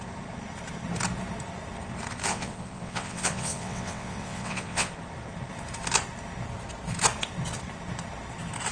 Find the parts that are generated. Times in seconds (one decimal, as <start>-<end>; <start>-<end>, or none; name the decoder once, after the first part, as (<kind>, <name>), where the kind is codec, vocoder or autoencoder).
2.3-4.9 (vocoder, WaveNeXt)